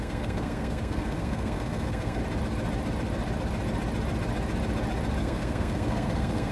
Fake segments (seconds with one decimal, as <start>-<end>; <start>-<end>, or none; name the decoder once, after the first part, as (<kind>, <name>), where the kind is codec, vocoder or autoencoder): 0.0-2.2 (codec, SNAC); 5.2-6.5